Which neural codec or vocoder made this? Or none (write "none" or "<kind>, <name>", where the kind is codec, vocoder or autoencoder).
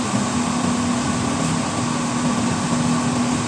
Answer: none